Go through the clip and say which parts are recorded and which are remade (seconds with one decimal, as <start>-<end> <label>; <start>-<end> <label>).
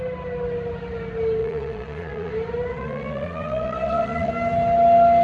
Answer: 0.0-1.4 recorded; 1.4-2.3 remade; 2.3-2.7 recorded; 2.7-4.3 remade; 4.3-5.2 recorded